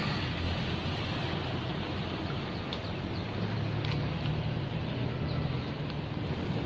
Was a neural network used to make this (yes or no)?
no